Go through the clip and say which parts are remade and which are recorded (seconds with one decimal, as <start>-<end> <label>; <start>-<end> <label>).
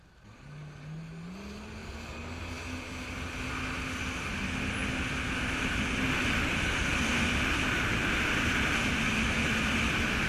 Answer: 0.0-10.3 recorded